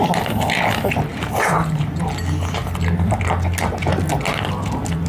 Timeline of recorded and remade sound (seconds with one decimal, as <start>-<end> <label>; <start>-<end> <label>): 0.0-1.1 recorded; 1.1-2.0 remade; 2.0-5.1 recorded